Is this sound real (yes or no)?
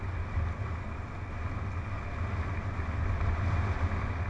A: yes